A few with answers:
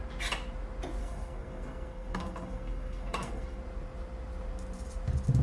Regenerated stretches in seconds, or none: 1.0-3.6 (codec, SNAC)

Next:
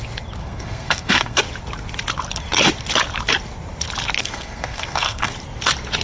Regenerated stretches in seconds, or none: 0.4-1.4 (codec, SNAC); 4.2-5.3

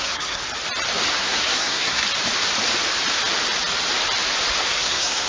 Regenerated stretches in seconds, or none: 0.0-0.4 (codec, SNAC); 1.1-2.0; 4.7-5.3

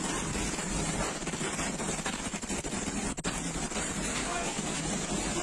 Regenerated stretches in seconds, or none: 4.1-4.8 (codec, SNAC)

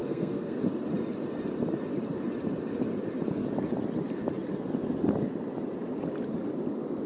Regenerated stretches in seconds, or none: 0.0-0.6 (codec, SNAC)

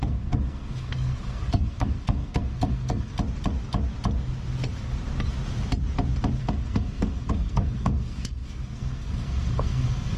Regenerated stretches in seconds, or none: 0.0-3.1 (codec, SNAC); 6.4-10.2

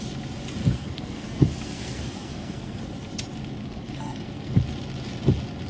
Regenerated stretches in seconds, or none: 0.6-2.8 (codec, SNAC); 3.6-4.6